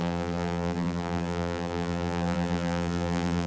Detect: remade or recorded remade